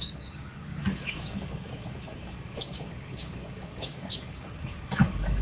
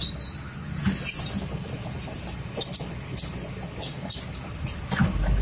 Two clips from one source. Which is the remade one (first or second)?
first